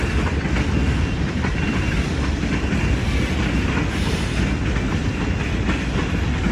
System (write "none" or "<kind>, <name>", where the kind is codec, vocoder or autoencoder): none